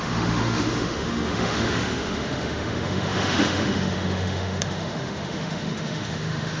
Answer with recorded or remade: remade